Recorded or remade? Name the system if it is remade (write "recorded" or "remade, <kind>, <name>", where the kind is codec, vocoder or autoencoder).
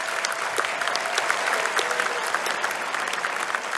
recorded